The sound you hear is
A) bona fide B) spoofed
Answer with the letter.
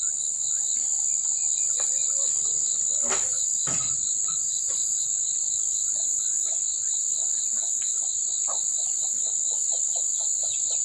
A